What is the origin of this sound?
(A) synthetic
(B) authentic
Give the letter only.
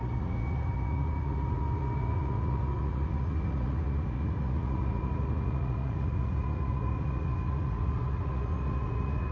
A